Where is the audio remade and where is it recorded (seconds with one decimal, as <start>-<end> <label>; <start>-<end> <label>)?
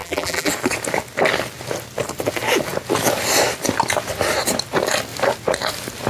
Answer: 0.0-0.5 remade; 0.5-6.1 recorded